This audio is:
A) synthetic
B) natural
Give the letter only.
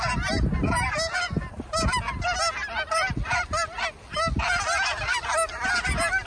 B